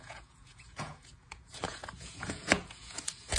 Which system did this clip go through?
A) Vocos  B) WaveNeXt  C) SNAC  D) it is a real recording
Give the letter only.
A